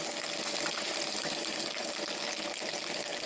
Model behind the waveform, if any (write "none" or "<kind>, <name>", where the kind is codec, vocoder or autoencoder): none